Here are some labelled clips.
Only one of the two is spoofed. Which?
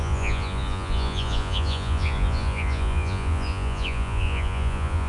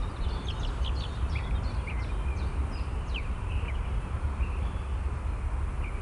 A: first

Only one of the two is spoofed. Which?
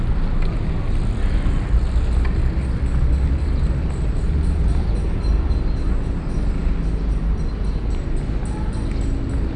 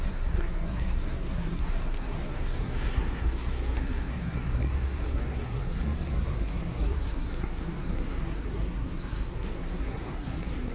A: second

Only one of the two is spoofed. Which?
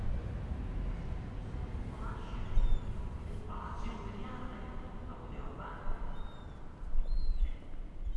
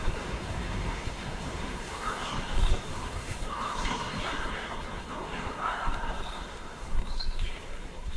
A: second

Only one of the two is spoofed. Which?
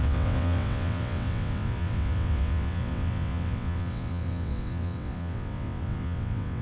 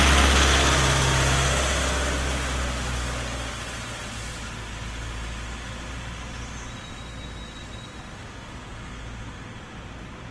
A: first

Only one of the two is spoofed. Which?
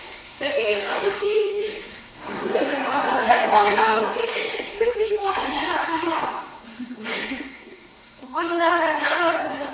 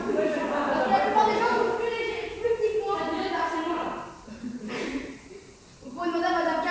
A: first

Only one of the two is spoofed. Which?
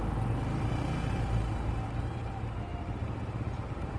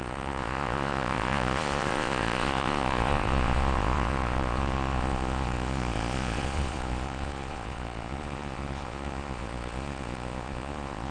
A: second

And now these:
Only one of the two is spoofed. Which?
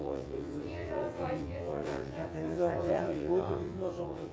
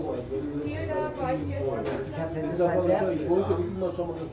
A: first